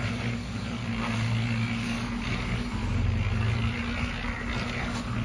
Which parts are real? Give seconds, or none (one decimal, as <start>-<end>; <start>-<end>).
0.8-1.8; 2.8-4.8